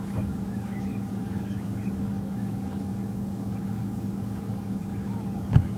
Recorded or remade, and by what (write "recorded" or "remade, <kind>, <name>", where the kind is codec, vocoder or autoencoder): remade, codec, DAC